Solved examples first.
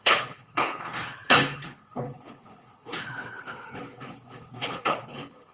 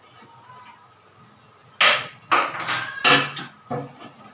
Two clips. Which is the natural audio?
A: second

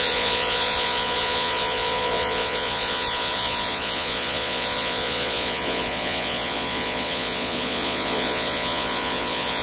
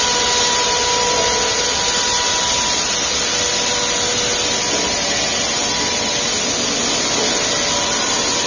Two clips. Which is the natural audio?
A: second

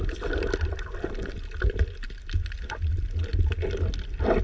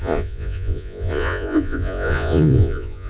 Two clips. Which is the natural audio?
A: first